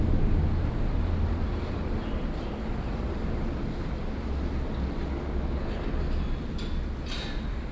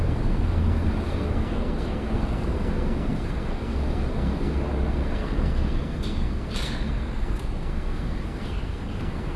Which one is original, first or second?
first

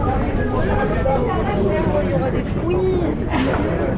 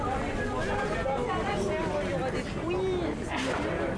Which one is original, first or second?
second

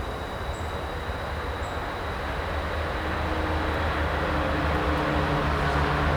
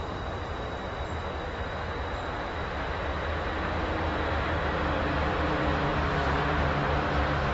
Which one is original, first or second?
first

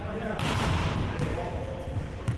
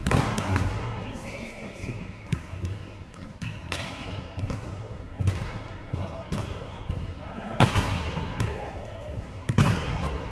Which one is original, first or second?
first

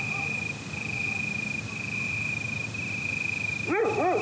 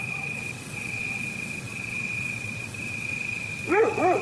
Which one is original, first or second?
first